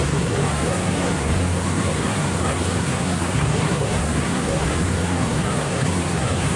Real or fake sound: fake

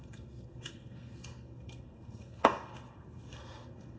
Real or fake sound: fake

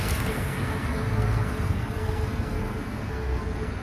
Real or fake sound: fake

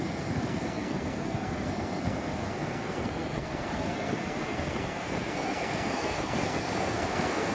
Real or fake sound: fake